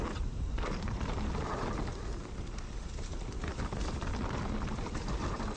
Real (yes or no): yes